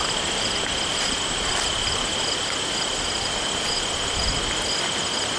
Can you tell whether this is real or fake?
real